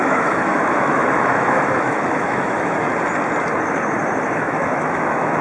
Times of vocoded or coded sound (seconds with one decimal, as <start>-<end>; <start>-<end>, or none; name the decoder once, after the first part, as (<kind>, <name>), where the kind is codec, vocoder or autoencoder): 0.0-2.9 (autoencoder, DAC-VAE); 4.4-5.4